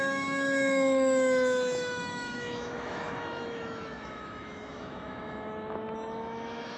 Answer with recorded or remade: remade